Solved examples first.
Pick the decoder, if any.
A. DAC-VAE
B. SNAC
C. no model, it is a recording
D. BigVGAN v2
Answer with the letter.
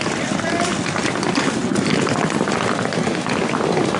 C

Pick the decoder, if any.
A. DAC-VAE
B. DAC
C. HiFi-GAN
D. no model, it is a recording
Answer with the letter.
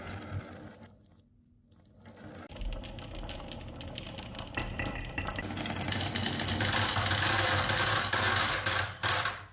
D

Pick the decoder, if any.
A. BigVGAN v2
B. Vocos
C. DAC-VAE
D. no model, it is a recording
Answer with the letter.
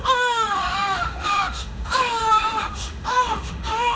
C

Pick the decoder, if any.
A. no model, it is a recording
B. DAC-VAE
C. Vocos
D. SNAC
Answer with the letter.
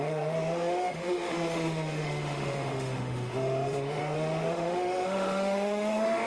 B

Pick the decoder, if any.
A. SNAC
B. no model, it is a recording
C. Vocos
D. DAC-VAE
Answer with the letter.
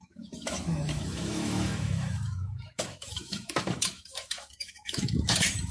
D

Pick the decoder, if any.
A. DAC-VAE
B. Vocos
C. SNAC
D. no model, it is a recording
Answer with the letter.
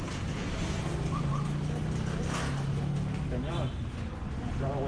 D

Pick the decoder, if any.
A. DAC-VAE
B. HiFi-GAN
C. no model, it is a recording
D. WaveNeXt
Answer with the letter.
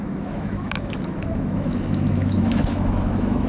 A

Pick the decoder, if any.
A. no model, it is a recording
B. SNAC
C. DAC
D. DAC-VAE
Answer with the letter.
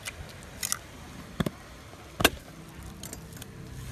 A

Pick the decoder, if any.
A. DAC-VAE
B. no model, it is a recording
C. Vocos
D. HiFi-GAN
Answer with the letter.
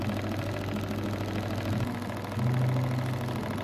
B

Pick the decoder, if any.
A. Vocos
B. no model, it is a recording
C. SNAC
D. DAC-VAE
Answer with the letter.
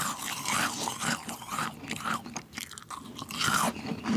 B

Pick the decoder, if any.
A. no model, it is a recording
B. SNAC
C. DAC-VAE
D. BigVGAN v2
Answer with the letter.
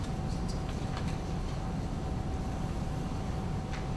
A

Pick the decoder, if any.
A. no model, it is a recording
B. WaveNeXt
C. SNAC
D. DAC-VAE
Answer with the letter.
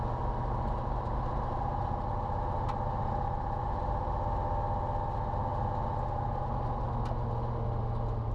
A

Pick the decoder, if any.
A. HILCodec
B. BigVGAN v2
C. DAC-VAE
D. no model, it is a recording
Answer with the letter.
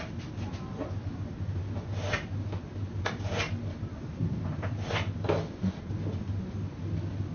D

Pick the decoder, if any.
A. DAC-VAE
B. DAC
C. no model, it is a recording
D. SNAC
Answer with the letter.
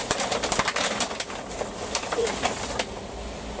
C